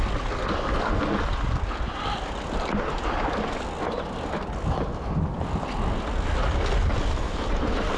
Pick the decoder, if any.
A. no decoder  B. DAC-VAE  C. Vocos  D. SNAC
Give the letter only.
A